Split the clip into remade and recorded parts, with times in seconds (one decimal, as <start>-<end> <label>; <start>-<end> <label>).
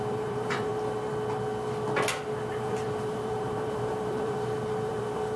0.0-0.7 remade; 0.7-2.5 recorded; 2.5-5.4 remade